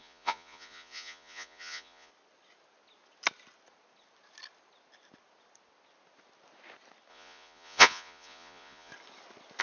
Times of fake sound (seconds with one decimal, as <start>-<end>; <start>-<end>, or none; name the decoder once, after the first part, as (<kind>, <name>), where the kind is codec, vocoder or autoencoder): 0.0-2.1 (vocoder, Vocos); 7.1-8.9

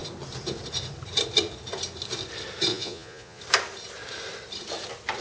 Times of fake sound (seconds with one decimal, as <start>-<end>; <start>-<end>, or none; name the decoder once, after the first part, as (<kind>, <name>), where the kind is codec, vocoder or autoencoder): 2.7-3.4 (vocoder, Vocos)

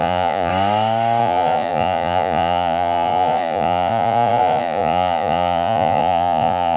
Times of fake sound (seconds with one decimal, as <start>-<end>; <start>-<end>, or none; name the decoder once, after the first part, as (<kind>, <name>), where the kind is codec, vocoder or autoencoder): 0.0-0.5 (vocoder, Vocos); 1.2-6.8

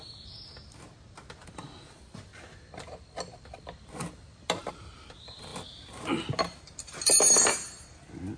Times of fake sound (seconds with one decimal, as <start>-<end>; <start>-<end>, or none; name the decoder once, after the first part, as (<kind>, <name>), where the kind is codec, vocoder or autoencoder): none